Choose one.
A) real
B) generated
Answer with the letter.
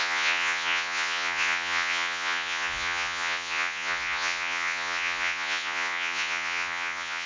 B